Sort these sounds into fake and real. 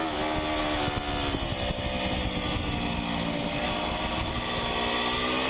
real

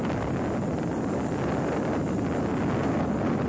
real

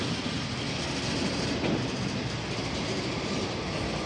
real